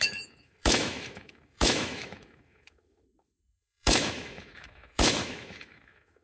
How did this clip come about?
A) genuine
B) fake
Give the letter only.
B